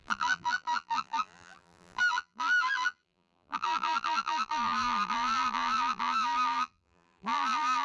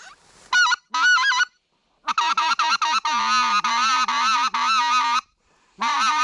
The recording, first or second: second